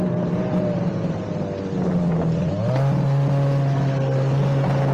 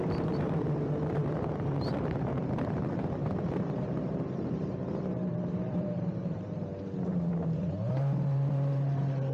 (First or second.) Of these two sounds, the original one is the first